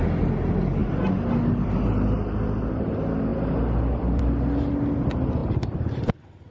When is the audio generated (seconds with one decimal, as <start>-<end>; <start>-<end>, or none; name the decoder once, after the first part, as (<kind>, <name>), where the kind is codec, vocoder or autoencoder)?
0.8-1.7 (vocoder, BigVGAN v2); 3.3-4.7; 5.4-6.1

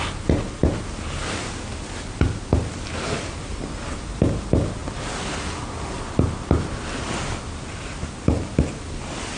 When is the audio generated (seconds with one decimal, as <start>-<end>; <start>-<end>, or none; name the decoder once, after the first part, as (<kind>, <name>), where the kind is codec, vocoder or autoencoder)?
none